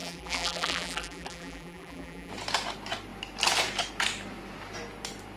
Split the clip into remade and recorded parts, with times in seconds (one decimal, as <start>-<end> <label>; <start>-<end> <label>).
0.0-2.3 remade; 2.3-5.4 recorded